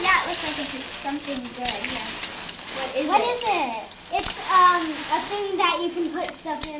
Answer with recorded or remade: recorded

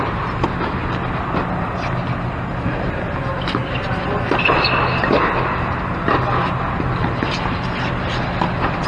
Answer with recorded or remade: recorded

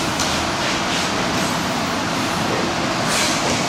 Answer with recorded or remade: recorded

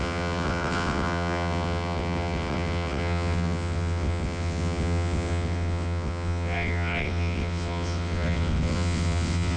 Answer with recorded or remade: remade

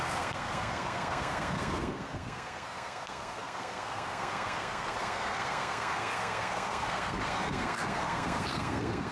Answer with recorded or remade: remade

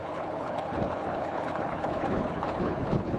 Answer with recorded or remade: remade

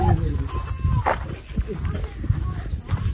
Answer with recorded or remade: recorded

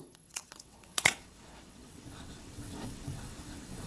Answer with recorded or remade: remade